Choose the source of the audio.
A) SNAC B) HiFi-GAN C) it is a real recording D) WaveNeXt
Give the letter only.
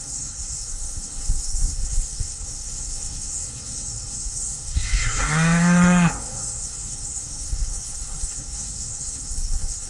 A